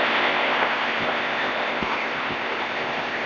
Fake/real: fake